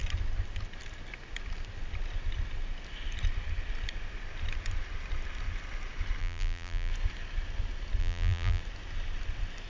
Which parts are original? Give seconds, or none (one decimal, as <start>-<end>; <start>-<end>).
0.0-6.2; 6.9-8.0; 8.6-9.7